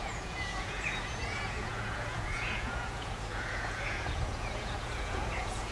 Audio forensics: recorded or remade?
remade